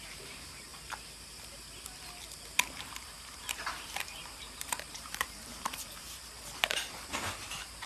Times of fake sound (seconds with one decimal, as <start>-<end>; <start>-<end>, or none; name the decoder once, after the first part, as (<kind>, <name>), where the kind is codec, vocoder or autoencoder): 0.0-0.7 (vocoder, BigVGAN v2); 2.8-7.9